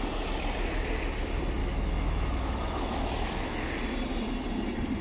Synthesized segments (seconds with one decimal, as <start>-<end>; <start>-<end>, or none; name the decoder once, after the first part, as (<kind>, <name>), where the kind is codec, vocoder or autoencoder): 1.6-3.7 (autoencoder, DAC-VAE)